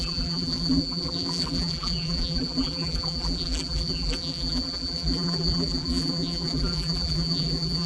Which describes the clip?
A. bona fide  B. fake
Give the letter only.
B